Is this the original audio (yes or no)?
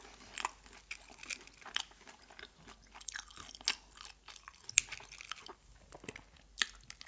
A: yes